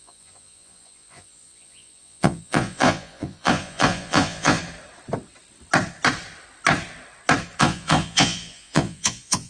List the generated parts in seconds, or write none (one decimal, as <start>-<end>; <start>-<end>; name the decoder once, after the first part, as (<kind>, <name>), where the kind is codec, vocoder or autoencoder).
0.0-4.6 (vocoder, Vocos); 7.6-9.5